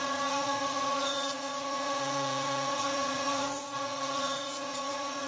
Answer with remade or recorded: remade